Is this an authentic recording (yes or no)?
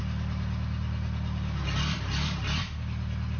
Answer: yes